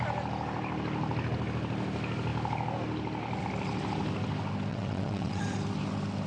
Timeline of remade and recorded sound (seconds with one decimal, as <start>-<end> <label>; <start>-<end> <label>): 0.0-4.7 recorded; 4.7-5.4 remade; 5.4-6.3 recorded